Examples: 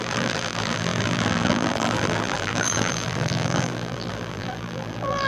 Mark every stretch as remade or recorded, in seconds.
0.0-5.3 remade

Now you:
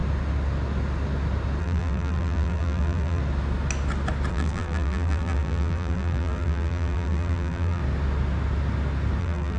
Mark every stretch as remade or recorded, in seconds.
0.0-1.6 recorded; 1.6-3.2 remade; 3.2-4.3 recorded; 4.3-7.8 remade; 7.8-9.2 recorded; 9.2-9.6 remade

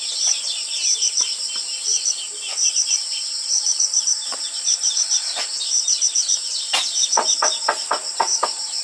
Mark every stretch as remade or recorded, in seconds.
0.0-8.8 remade

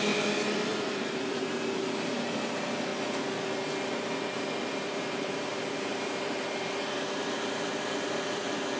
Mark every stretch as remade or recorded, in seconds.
0.0-0.7 recorded; 0.7-2.2 remade; 2.2-4.7 recorded; 4.7-5.5 remade; 5.5-5.9 recorded; 5.9-6.8 remade; 6.8-8.8 recorded

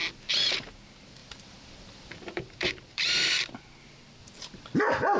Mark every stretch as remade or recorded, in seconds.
0.0-1.2 recorded; 1.2-3.3 remade; 3.3-4.2 recorded; 4.2-5.2 remade

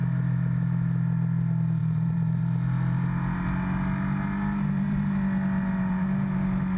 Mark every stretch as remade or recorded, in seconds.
0.0-1.8 recorded; 1.8-2.4 remade; 2.4-6.8 recorded